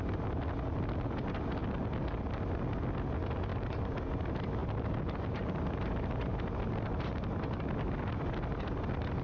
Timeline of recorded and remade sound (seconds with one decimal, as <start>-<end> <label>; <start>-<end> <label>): 0.0-3.5 recorded; 3.5-4.0 remade; 4.0-4.6 recorded; 4.6-5.5 remade; 5.5-9.2 recorded